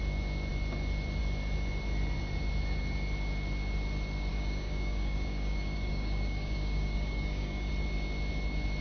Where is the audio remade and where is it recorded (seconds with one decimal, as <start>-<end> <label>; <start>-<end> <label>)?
0.0-4.3 recorded; 4.3-7.7 remade; 7.7-8.8 recorded